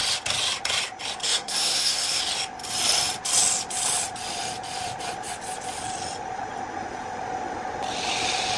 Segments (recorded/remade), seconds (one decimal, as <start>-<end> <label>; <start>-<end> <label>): 0.0-1.2 recorded; 1.2-2.2 remade; 2.2-8.6 recorded